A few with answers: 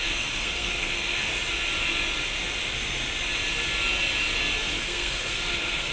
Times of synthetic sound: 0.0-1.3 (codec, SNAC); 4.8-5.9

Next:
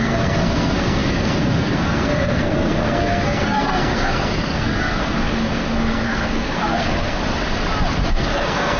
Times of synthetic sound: 0.0-7.2 (codec, SNAC); 8.1-8.8

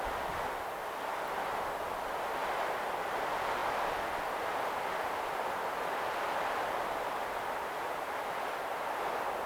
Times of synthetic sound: none

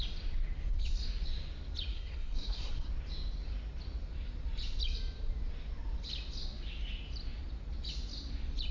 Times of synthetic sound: 1.9-2.9 (codec, SNAC)

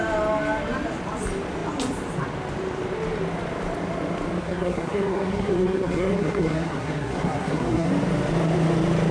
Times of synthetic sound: 4.4-7.9 (codec, SNAC)

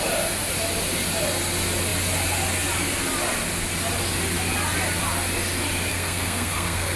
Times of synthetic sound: 5.9-7.0 (codec, SNAC)

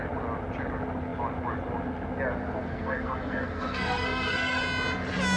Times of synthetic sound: 2.6-4.6 (codec, SNAC)

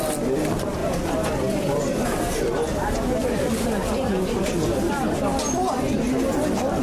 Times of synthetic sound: none